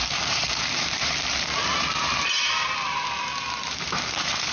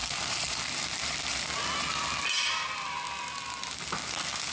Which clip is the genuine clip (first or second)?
second